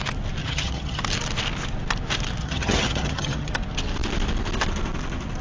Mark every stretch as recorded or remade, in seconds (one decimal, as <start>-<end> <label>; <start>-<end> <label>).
0.0-0.4 recorded; 0.4-1.0 remade; 1.0-2.4 recorded; 2.4-3.5 remade; 3.5-5.4 recorded